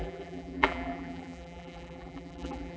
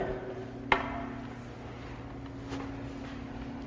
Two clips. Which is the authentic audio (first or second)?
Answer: second